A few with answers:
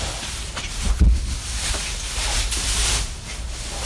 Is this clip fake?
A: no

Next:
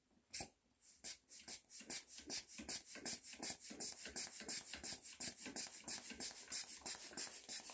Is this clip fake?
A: yes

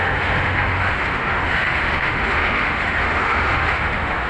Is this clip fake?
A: yes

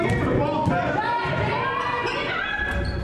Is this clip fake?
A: no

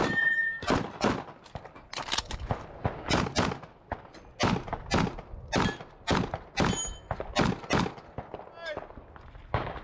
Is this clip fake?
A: no